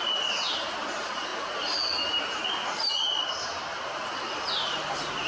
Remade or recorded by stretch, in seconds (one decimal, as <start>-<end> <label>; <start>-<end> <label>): 0.0-5.3 recorded